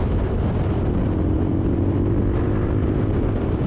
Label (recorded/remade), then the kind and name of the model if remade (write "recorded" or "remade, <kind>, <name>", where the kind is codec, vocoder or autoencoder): recorded